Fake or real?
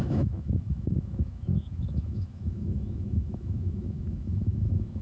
fake